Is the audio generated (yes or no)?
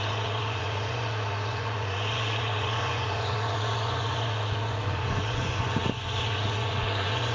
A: yes